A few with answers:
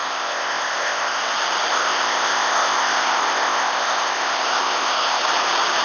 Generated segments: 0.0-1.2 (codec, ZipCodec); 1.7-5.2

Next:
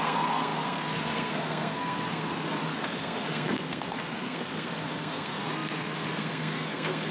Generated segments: 0.0-7.1 (codec, SNAC)

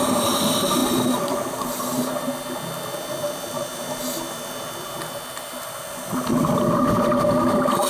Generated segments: none

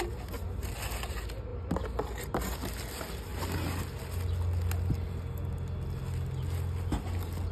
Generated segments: none

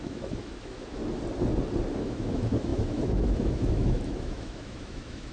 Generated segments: 0.0-1.0 (autoencoder, DAC-VAE); 2.0-5.3